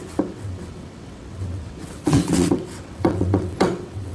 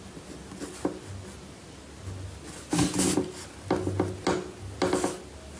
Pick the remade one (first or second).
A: first